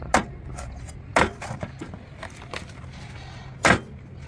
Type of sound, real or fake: real